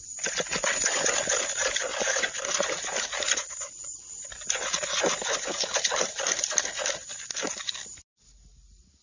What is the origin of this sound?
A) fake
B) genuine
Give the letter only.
B